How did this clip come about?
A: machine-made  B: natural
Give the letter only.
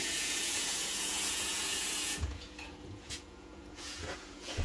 A